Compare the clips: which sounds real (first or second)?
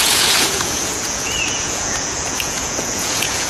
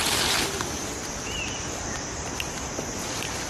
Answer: second